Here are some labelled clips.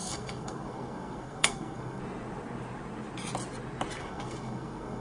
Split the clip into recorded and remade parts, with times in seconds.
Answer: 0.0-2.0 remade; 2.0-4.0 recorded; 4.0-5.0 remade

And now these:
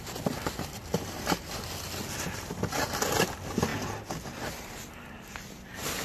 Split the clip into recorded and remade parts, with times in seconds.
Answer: 0.0-6.0 recorded

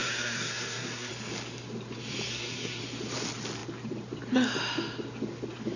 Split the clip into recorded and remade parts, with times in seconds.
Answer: 0.0-1.1 remade; 1.1-2.3 recorded; 2.3-2.8 remade; 2.8-5.8 recorded

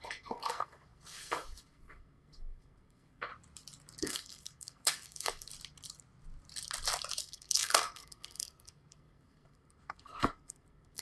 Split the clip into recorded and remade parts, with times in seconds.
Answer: 0.0-3.3 remade; 3.3-4.0 recorded; 4.0-5.5 remade; 5.5-7.2 recorded; 7.2-11.0 remade